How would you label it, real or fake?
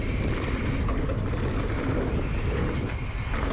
real